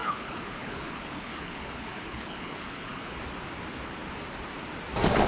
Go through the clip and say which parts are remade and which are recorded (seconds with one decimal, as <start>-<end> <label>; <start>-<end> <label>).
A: 0.0-3.2 remade; 3.2-5.3 recorded